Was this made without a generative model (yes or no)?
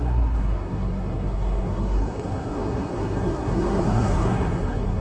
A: no